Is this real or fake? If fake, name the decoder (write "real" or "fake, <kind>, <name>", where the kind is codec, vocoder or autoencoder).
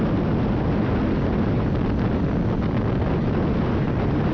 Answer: real